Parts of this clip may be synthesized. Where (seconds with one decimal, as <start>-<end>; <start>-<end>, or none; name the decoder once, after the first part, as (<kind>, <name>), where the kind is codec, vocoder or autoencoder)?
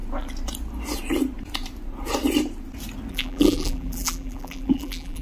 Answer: 3.1-5.2 (vocoder, BigVGAN v2)